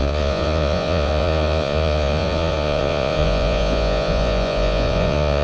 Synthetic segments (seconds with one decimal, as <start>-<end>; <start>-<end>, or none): 0.0-5.4